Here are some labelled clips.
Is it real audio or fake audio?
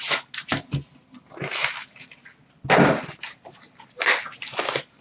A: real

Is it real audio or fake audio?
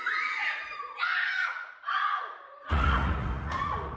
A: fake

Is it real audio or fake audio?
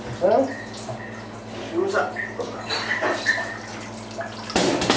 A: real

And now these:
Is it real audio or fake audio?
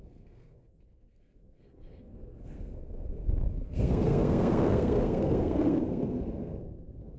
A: fake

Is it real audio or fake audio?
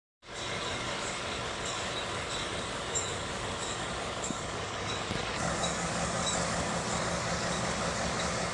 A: fake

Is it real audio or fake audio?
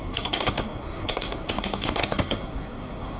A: fake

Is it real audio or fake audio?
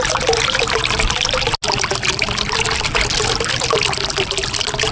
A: real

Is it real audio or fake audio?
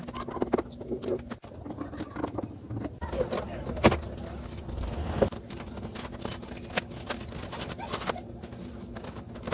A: real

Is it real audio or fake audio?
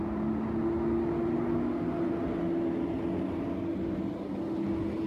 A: real